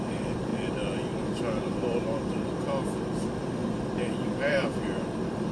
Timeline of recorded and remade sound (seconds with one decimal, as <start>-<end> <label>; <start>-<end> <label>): 0.0-0.5 remade; 0.5-2.3 recorded; 2.3-3.6 remade; 3.6-4.5 recorded; 4.5-5.5 remade

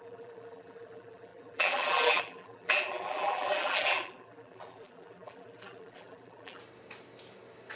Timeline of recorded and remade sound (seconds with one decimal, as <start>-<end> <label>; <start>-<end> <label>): 0.0-6.6 remade; 6.6-7.8 recorded

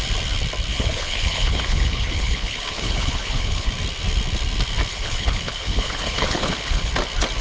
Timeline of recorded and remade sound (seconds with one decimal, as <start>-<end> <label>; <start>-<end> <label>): 0.0-0.7 recorded; 0.7-3.7 remade; 3.7-4.9 recorded; 4.9-6.9 remade; 6.9-7.4 recorded